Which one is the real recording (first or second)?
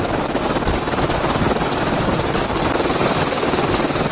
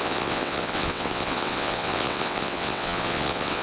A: first